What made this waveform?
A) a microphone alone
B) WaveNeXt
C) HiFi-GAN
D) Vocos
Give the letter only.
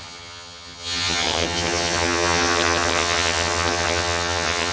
C